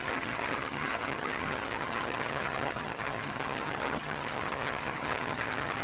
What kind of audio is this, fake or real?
fake